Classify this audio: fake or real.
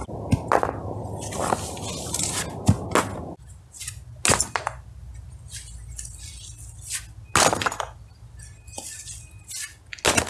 real